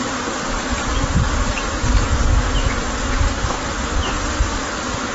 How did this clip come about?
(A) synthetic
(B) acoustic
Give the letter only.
B